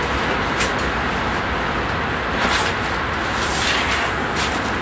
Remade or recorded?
recorded